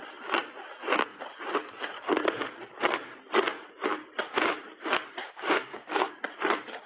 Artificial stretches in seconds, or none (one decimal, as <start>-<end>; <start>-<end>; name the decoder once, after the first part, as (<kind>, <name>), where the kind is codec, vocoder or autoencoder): 5.2-6.2 (codec, DAC)